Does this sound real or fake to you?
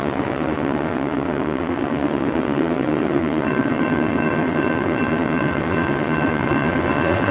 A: fake